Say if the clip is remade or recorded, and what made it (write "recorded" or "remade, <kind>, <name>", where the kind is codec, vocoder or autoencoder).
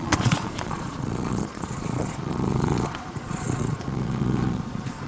remade, vocoder, Vocos